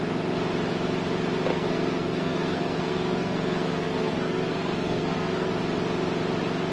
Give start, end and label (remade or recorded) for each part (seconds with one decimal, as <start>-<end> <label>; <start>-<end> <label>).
0.0-1.5 recorded; 1.5-5.5 remade; 5.5-6.7 recorded